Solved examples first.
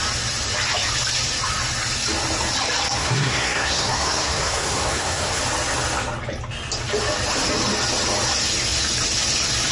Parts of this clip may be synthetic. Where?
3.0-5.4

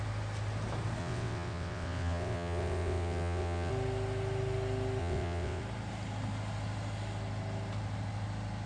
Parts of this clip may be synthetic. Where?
1.0-3.7; 5.0-5.6